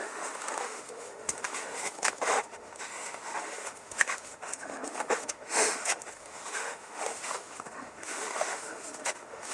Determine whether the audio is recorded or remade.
remade